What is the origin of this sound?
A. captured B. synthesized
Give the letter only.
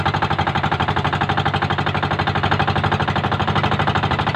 A